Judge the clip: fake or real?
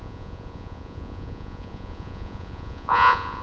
fake